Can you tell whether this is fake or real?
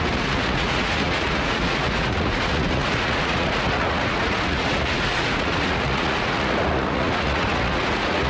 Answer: fake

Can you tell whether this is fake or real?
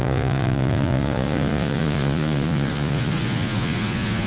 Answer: fake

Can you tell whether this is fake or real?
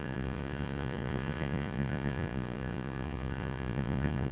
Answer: fake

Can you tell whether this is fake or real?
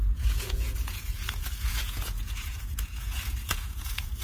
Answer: fake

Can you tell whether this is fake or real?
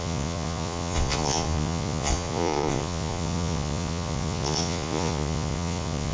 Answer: fake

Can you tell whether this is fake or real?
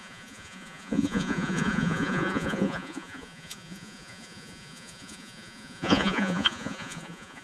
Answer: fake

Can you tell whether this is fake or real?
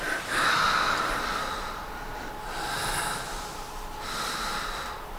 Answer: real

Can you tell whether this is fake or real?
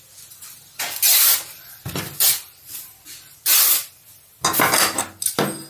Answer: real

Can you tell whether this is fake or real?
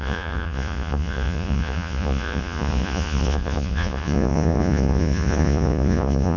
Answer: fake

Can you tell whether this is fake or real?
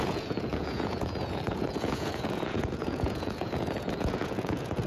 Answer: fake